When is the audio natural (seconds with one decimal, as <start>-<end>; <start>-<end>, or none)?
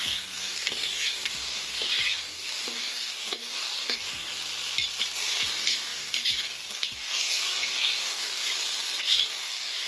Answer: 4.3-5.5; 8.5-9.0